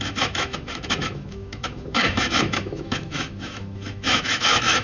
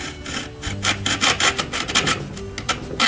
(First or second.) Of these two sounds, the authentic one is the second